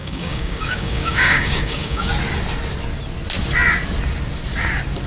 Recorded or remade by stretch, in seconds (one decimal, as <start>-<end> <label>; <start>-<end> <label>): 0.0-2.1 remade; 2.1-5.1 recorded